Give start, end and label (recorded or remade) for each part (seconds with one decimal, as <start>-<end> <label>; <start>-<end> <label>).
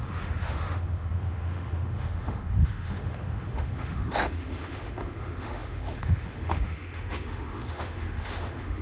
0.0-8.8 remade